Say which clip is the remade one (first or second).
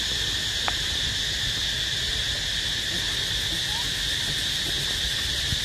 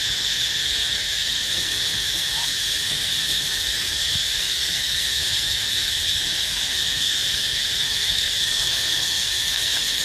second